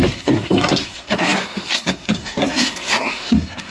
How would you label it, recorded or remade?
remade